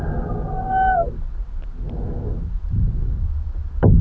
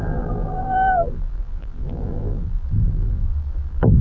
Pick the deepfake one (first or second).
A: second